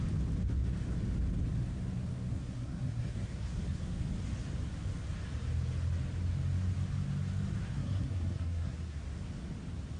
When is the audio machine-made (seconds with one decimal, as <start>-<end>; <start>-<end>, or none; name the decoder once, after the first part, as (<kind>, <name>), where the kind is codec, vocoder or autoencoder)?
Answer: 2.3-4.0 (codec, SNAC); 7.6-9.0